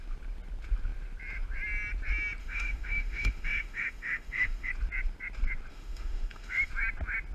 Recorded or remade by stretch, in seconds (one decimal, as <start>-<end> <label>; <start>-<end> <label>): 0.0-2.4 recorded; 2.4-4.7 remade; 4.7-5.7 recorded; 5.7-6.7 remade; 6.7-7.3 recorded